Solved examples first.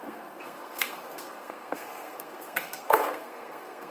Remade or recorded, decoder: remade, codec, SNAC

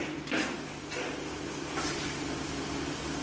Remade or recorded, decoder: recorded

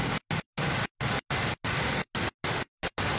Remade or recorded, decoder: recorded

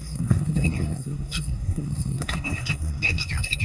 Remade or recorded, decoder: remade, codec, SNAC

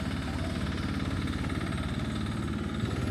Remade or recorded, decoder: recorded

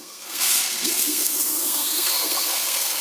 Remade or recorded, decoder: remade, codec, SNAC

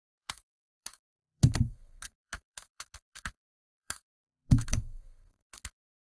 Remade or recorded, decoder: remade, codec, SNAC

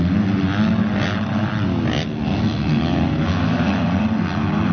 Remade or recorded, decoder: recorded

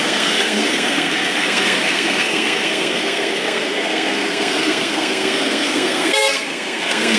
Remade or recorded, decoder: remade, codec, SNAC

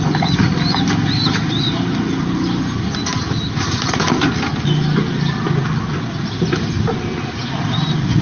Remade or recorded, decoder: recorded